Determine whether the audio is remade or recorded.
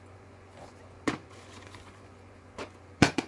remade